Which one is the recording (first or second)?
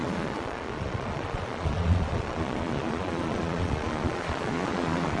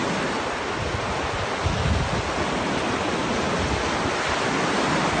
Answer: second